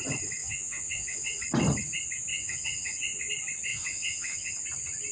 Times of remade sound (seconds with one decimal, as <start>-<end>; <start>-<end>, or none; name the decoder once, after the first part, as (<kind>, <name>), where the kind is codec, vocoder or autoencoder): 0.4-1.4 (vocoder, Vocos); 2.3-3.3; 3.7-4.5